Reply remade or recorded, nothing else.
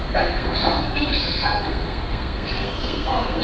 remade